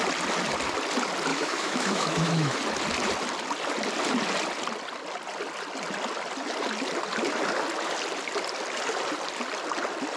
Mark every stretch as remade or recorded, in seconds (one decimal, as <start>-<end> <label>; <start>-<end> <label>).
0.0-1.3 recorded; 1.3-2.6 remade; 2.6-10.2 recorded